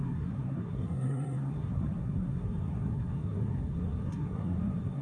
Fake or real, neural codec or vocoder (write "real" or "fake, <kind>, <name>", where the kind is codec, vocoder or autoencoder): fake, codec, SNAC